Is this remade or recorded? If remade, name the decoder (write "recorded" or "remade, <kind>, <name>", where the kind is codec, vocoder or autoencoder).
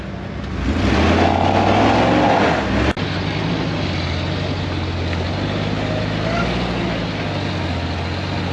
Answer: recorded